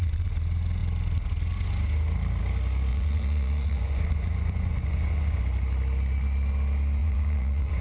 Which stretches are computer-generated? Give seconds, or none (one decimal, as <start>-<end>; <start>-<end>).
2.9-5.4; 7.0-7.8